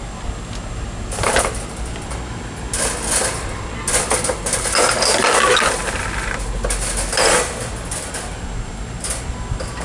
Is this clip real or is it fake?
real